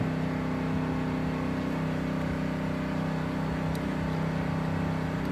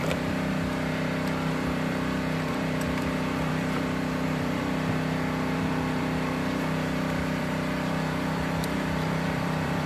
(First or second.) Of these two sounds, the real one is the first